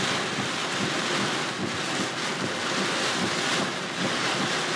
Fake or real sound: real